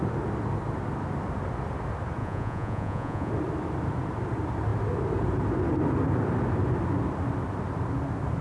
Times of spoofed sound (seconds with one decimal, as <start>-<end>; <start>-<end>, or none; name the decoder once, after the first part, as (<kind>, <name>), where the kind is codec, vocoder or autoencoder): 2.2-3.3 (vocoder, Vocos)